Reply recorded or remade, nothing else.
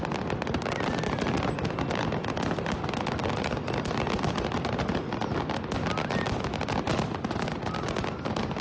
recorded